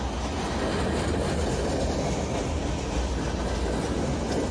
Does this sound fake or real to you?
real